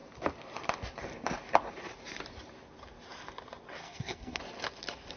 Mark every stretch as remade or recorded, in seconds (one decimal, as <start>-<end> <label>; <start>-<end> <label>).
0.0-3.8 recorded; 3.8-4.4 remade; 4.4-5.2 recorded